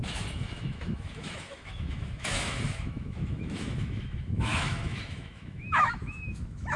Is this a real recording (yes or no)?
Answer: no